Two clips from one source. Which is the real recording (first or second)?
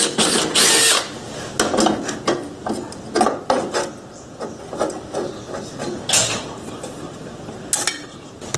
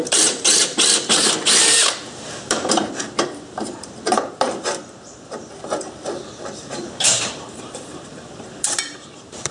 first